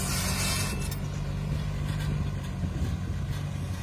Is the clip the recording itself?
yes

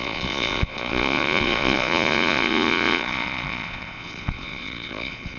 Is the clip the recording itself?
no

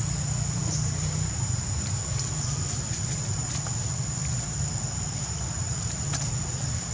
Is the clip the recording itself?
yes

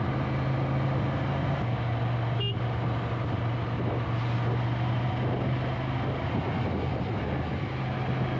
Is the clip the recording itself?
yes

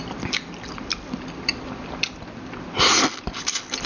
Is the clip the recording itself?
yes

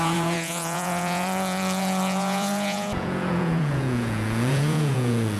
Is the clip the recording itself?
no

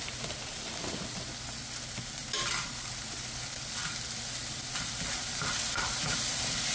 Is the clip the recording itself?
yes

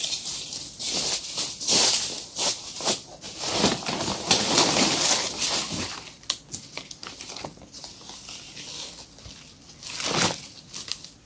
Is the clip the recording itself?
yes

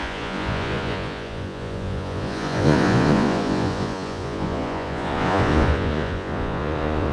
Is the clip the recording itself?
no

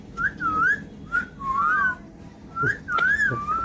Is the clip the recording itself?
yes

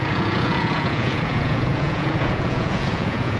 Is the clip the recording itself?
no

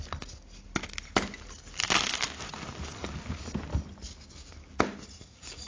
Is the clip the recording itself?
yes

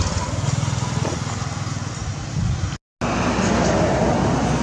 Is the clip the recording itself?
yes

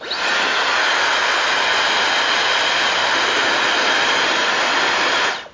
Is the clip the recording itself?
yes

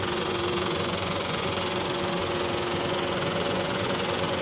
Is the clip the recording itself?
no